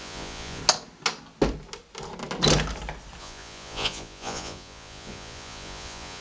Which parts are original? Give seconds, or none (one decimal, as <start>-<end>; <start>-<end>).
0.6-3.2